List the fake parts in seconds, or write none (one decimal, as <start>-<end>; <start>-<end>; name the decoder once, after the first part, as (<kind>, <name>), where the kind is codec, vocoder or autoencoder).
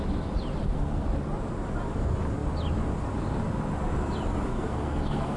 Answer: 0.6-1.1 (codec, SNAC); 4.5-5.4